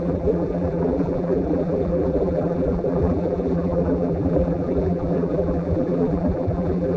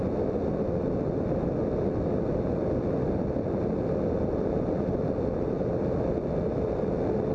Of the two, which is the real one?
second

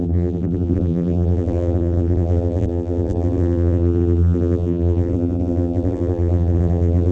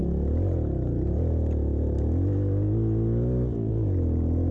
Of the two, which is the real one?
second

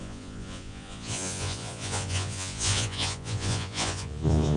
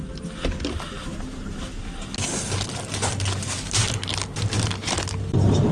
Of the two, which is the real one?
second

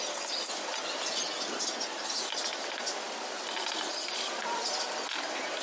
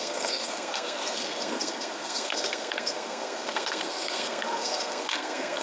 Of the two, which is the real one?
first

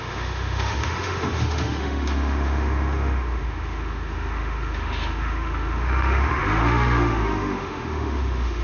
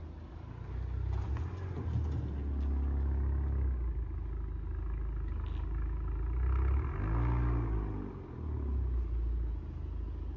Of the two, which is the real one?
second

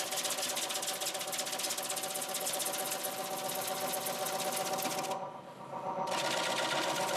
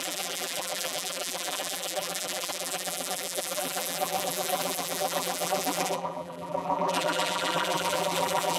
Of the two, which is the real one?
first